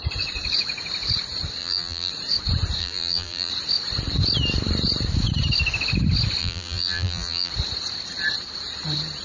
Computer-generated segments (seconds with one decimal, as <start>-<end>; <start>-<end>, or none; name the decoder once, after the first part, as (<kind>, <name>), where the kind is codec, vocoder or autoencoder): 1.6-2.1 (vocoder, BigVGAN v2); 2.8-3.5; 6.4-7.5